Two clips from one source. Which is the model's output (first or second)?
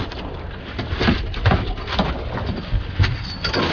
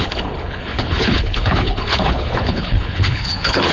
second